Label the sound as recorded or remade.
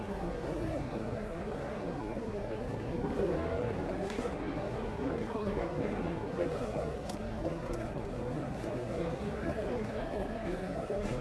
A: remade